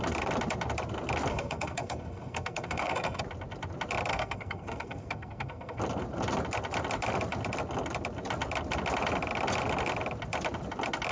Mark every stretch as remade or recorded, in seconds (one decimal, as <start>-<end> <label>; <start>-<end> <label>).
0.0-1.3 recorded; 1.3-3.2 remade; 3.2-4.1 recorded; 4.1-5.8 remade; 5.8-11.1 recorded